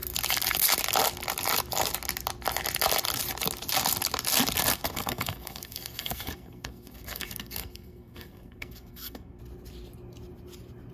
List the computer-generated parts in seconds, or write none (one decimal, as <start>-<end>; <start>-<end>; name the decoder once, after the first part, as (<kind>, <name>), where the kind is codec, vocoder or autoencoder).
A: 4.7-9.4 (codec, SNAC)